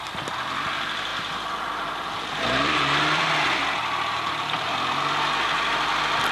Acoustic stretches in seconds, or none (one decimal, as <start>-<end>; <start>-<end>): 0.0-1.1; 4.9-6.3